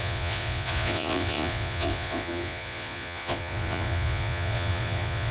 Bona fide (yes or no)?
no